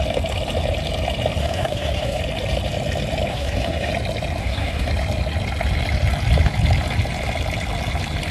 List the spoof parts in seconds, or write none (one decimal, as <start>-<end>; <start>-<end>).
1.4-2.2; 3.3-3.9; 4.4-4.9